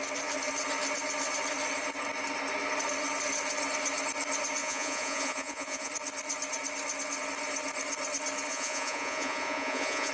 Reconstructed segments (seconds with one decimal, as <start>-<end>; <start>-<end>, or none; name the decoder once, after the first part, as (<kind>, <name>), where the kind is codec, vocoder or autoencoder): 4.6-5.9 (vocoder, Vocos); 8.5-10.1